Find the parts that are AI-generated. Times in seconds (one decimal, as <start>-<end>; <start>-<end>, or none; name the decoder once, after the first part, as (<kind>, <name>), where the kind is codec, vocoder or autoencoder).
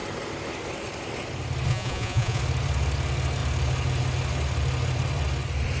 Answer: 1.7-2.4 (vocoder, Vocos)